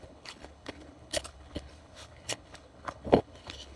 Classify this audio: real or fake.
fake